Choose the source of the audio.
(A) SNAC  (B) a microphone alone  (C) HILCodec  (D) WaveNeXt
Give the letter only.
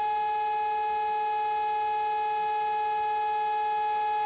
B